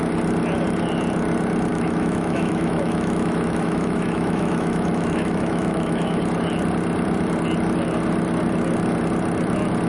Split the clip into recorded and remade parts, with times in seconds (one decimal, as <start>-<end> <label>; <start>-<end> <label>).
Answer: 0.0-1.7 recorded; 1.7-6.2 remade; 6.2-9.9 recorded